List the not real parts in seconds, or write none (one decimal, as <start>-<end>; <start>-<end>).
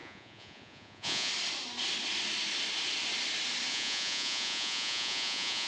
0.0-1.3; 3.7-5.7